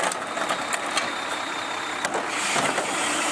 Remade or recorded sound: recorded